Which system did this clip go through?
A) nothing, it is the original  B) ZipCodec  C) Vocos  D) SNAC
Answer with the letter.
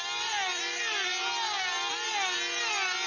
A